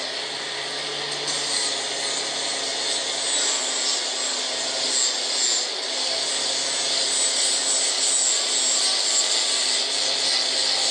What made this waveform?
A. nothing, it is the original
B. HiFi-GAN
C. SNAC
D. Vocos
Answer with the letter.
A